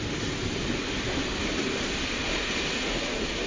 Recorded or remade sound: recorded